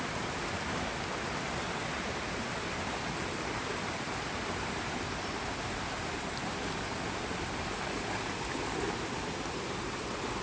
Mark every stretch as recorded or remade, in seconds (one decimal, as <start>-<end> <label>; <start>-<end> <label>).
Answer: 0.0-10.4 recorded